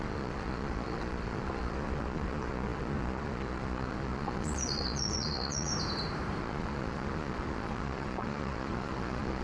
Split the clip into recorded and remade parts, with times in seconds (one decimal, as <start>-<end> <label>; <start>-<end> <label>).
0.0-5.7 remade; 5.7-6.4 recorded; 6.4-9.4 remade